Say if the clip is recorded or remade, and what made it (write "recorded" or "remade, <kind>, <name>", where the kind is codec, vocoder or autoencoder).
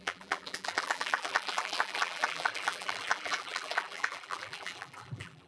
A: remade, vocoder, BigVGAN v2